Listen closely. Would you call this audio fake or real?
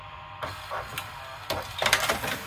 real